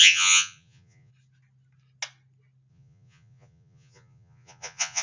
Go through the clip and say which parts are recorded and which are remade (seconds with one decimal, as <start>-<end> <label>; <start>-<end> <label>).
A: 0.0-1.1 remade; 1.1-2.7 recorded; 2.7-5.0 remade